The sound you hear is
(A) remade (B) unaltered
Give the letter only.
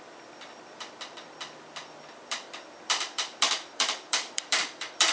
A